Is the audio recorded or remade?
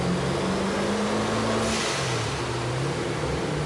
recorded